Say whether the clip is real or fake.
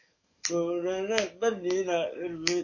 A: fake